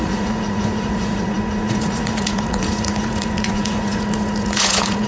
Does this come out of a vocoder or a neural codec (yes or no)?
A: yes